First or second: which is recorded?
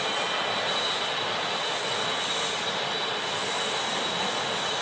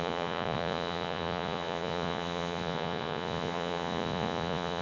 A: first